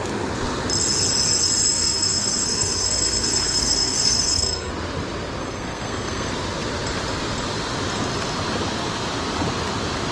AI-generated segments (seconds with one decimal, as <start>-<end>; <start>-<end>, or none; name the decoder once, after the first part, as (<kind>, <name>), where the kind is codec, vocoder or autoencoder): 1.7-4.7 (codec, SNAC); 5.4-6.3